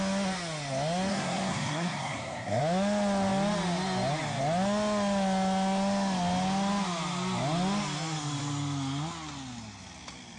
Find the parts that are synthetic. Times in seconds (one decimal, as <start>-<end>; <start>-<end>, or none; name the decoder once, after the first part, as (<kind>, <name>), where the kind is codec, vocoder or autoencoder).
1.1-2.6 (codec, SNAC)